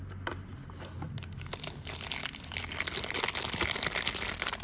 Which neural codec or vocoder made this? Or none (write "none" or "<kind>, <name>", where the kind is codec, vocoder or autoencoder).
none